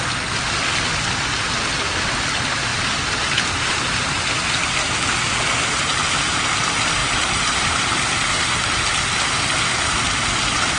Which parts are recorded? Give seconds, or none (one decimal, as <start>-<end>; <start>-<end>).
0.0-2.7; 4.4-6.0; 6.5-7.0; 8.4-10.8